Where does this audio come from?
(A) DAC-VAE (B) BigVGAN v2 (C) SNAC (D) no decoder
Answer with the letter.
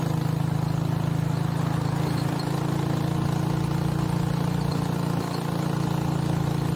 D